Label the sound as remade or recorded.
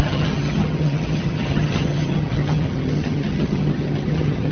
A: remade